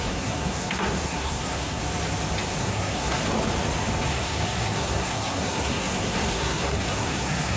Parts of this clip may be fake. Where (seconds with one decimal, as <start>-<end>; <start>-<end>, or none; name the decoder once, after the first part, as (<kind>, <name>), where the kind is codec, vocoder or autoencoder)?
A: 0.0-1.8 (codec, SNAC); 2.6-3.2; 4.1-7.6